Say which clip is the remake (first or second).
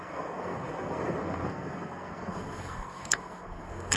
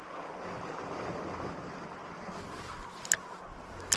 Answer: first